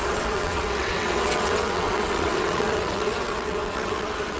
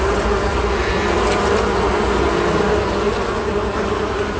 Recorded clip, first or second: second